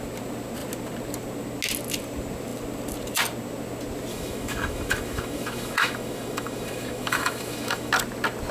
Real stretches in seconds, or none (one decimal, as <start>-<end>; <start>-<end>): 0.0-4.1; 7.9-8.5